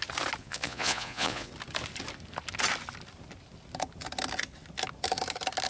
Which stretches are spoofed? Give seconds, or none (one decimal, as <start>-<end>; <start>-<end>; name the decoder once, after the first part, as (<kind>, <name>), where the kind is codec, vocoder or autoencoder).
0.4-1.5 (vocoder, Vocos)

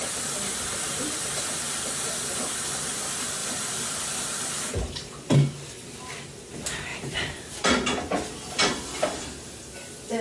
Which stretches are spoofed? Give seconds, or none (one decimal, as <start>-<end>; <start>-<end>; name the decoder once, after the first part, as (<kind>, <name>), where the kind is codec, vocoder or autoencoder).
3.4-4.2 (vocoder, BigVGAN v2); 6.9-7.7

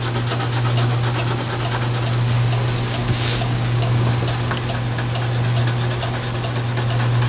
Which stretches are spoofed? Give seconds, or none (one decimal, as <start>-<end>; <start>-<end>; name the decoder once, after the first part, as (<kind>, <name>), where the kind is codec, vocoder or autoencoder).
3.0-4.1 (codec, DAC)

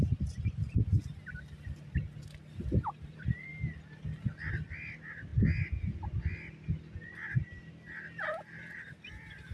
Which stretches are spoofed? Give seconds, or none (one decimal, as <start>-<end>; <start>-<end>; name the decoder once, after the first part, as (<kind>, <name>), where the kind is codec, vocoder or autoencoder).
none

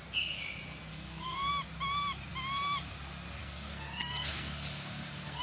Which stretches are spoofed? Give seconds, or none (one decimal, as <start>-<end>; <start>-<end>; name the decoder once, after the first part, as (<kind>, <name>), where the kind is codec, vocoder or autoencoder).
0.9-1.5 (codec, SNAC); 3.4-5.4

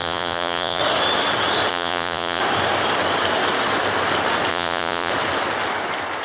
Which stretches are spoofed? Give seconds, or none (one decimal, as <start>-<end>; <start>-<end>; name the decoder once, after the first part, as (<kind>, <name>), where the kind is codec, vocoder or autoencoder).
0.0-0.8 (vocoder, Vocos); 1.7-2.4; 4.5-5.1

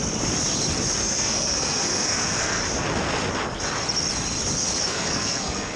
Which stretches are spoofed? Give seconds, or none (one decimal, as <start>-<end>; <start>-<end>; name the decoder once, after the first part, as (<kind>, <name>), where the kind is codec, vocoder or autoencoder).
1.0-2.6 (codec, SNAC); 4.9-5.8